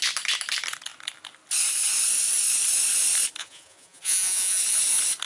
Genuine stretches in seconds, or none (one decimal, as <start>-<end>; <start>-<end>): 0.0-3.4; 4.6-5.3